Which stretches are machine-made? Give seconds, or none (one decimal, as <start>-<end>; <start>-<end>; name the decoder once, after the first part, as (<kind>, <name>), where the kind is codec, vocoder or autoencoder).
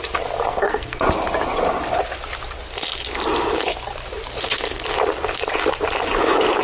0.5-1.0 (codec, SNAC)